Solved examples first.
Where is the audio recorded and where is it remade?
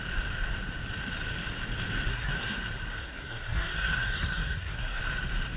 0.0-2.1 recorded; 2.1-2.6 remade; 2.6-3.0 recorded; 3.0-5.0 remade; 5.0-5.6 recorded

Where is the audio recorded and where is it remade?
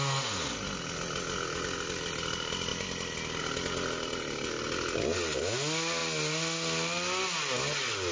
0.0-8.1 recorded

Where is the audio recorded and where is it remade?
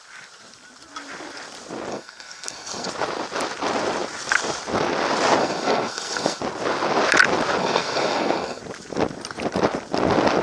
0.0-1.9 recorded; 1.9-2.9 remade; 2.9-5.4 recorded; 5.4-6.4 remade; 6.4-7.6 recorded; 7.6-8.6 remade; 8.6-10.4 recorded